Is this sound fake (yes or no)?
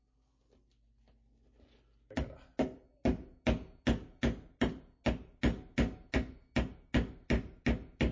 no